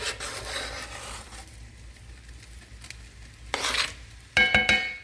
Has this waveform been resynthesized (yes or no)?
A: no